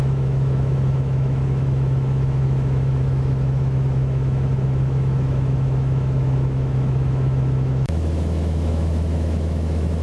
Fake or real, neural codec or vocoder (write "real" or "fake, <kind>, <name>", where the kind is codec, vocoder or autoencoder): fake, autoencoder, DAC-VAE